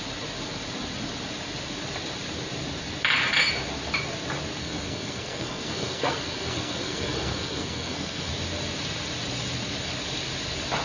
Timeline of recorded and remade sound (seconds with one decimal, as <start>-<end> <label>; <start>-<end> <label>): 0.0-4.6 recorded; 4.6-8.3 remade; 8.3-10.8 recorded